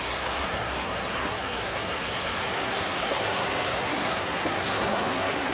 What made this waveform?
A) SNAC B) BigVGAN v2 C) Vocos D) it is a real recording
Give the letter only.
A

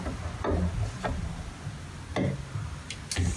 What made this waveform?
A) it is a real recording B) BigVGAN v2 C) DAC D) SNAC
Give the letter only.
A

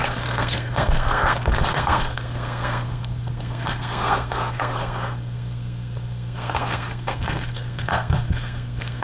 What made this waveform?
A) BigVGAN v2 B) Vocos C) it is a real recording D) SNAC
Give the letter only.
D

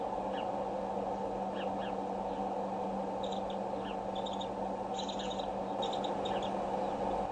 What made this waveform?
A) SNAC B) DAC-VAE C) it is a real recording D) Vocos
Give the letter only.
C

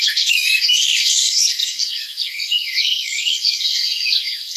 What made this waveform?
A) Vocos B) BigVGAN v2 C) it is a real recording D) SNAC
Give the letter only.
D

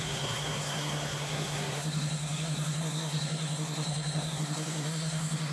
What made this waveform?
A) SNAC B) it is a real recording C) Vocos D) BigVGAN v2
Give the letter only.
A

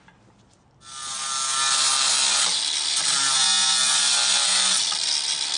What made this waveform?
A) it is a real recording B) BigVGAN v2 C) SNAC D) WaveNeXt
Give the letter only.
A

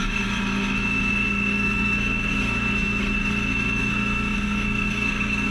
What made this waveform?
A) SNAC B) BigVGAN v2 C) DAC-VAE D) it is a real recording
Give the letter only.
A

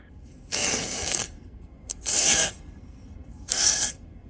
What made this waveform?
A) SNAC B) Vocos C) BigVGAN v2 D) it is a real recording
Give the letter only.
A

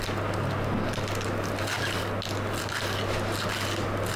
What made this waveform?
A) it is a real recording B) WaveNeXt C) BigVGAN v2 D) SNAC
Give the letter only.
A